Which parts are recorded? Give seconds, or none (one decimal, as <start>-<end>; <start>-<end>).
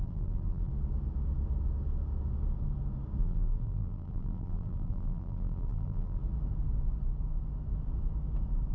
0.7-3.2; 6.2-8.7